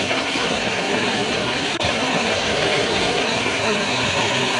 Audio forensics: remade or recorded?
remade